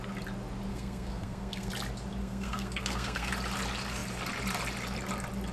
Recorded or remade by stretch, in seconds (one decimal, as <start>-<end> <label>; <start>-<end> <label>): 0.0-0.7 recorded; 0.7-1.7 remade; 1.7-2.2 recorded; 2.2-3.3 remade; 3.3-5.5 recorded